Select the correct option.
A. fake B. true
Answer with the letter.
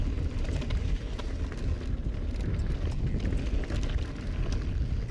B